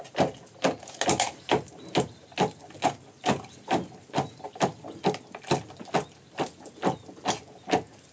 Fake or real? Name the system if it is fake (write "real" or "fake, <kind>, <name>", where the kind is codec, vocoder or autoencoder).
real